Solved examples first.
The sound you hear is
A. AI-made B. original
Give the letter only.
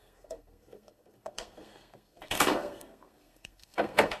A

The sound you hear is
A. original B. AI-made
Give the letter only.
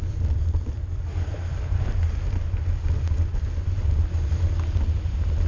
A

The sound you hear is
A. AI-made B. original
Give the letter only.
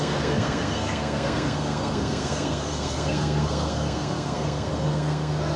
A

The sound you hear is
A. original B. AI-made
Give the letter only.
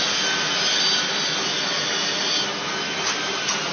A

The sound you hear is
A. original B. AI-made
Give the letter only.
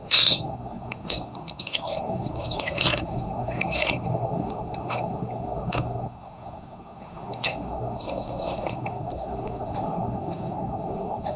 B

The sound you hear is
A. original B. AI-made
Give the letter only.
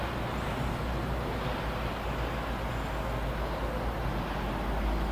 A